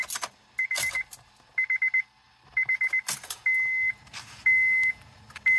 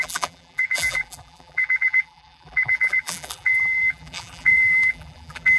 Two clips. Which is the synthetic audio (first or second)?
second